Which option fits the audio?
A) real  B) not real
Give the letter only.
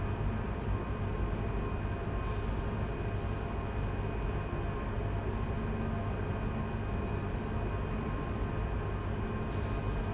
A